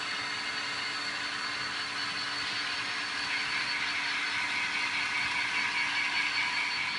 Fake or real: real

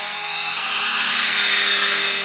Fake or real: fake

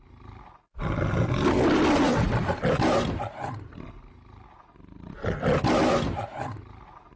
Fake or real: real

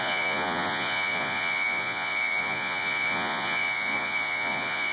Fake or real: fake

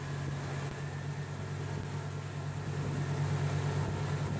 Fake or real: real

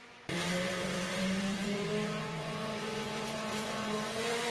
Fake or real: fake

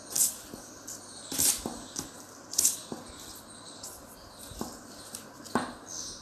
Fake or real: real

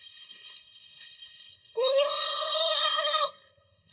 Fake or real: fake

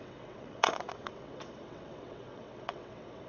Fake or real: fake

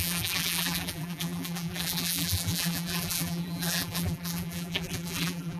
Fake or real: fake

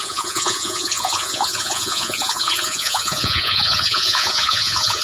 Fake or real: fake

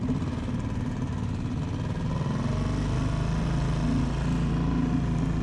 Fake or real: real